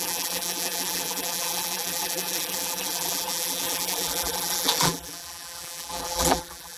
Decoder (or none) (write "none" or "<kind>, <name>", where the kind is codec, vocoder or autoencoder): vocoder, BigVGAN v2